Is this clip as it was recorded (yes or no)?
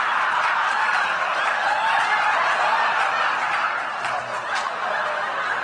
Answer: yes